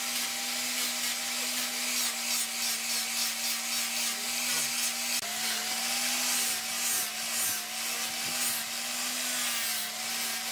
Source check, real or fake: real